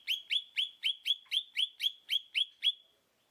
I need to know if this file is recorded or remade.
recorded